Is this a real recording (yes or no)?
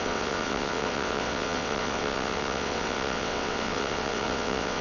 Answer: no